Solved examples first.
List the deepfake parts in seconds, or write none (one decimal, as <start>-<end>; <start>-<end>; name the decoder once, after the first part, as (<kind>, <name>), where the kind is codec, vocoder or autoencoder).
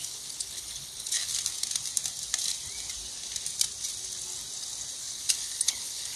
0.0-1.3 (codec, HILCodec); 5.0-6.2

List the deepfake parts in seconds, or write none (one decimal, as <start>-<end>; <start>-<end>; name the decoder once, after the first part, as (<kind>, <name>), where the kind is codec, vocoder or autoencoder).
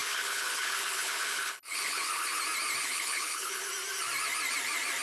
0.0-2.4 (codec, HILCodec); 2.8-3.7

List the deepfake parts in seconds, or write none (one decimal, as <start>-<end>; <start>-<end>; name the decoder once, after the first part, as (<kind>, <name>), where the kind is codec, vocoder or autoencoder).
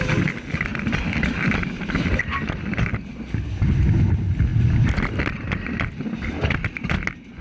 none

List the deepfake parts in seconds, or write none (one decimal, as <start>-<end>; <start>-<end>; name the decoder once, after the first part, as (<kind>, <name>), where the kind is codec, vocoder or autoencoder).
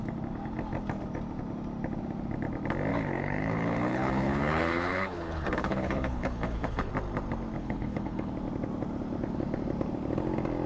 2.9-6.9 (codec, HILCodec); 7.6-8.3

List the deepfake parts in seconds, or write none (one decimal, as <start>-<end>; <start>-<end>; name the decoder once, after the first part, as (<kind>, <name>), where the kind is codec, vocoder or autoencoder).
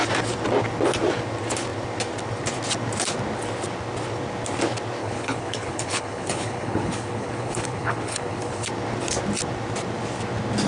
5.0-8.7 (codec, HILCodec)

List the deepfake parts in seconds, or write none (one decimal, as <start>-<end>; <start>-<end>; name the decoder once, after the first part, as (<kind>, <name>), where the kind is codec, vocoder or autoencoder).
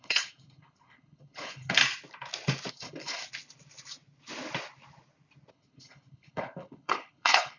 0.0-1.8 (codec, HILCodec); 2.7-3.2; 5.5-7.6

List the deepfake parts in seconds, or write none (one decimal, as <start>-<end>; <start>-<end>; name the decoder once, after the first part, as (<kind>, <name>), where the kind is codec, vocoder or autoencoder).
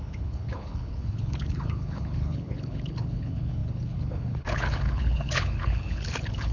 0.0-6.5 (codec, HILCodec)